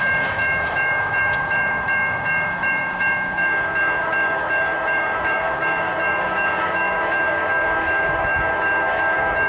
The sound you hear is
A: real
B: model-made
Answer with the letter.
B